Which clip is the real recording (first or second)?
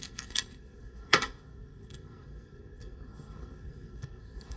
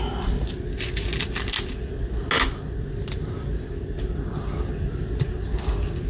second